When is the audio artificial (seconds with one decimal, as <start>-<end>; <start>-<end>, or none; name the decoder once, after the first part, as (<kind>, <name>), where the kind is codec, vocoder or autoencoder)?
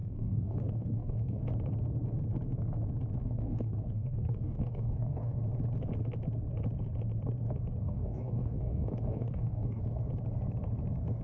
0.0-1.4 (codec, DAC); 3.2-5.4; 7.8-9.8